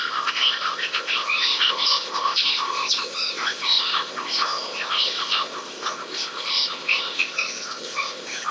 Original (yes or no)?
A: no